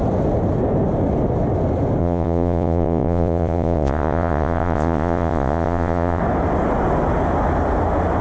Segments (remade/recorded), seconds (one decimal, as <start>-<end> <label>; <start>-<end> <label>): 0.0-2.0 recorded; 2.0-6.2 remade; 6.2-8.2 recorded